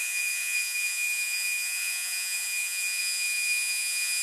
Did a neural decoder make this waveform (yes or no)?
yes